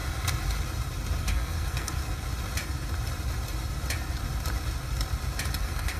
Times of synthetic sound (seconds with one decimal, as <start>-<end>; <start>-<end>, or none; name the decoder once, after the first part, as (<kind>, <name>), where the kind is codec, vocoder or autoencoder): 1.2-2.0 (codec, SNAC); 5.6-6.0